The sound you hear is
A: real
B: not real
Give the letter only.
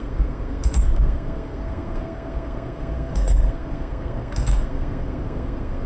B